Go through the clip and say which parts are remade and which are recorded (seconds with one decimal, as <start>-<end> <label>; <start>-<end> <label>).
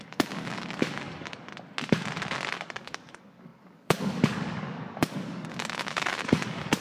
0.0-1.5 remade; 1.5-2.5 recorded; 2.5-6.8 remade